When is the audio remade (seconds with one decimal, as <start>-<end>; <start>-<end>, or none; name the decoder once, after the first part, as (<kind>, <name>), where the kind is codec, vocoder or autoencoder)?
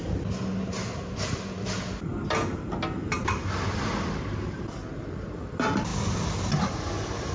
none